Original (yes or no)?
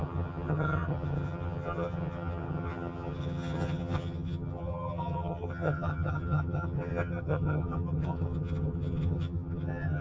no